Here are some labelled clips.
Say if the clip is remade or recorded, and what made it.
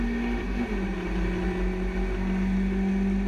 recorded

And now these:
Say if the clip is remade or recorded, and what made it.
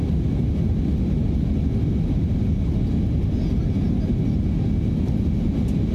recorded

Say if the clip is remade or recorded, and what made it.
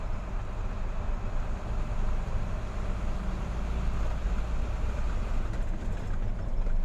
recorded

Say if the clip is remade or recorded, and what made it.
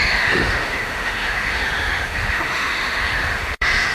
remade, autoencoder, DAC-VAE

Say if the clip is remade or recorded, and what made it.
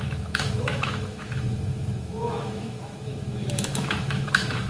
remade, autoencoder, DAC-VAE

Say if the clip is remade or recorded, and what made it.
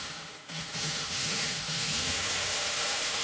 remade, autoencoder, DAC-VAE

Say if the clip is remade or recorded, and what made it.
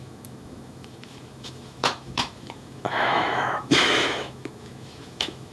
remade, autoencoder, DAC-VAE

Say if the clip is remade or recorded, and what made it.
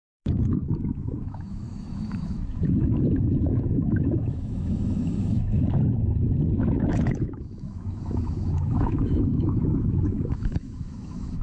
remade, autoencoder, DAC-VAE